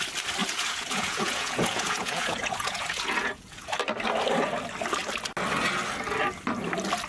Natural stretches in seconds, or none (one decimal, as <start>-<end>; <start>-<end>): 0.0-0.4; 3.8-7.1